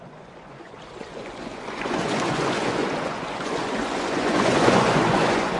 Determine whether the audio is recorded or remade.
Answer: remade